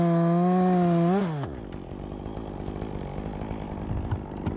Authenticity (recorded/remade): recorded